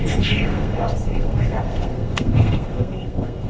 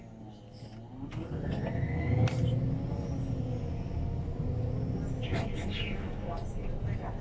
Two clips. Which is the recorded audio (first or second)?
second